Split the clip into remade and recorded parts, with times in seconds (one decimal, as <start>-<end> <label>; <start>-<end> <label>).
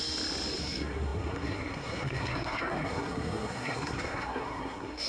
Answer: 0.0-0.6 recorded; 0.6-5.1 remade